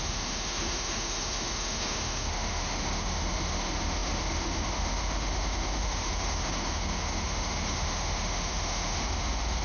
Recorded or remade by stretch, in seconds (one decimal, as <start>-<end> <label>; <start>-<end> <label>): 0.0-9.6 remade